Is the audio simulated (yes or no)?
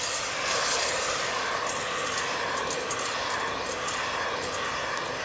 no